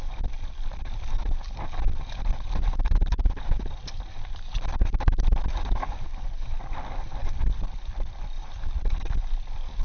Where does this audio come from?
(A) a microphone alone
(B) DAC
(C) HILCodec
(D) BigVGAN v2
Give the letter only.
D